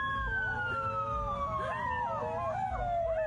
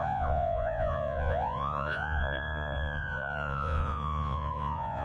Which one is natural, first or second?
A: first